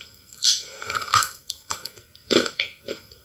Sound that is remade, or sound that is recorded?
remade